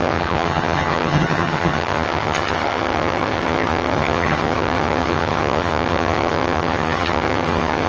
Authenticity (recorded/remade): remade